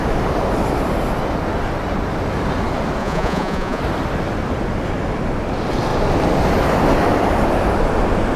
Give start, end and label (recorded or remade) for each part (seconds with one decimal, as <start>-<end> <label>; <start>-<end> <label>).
0.0-3.0 recorded; 3.0-3.8 remade; 3.8-8.4 recorded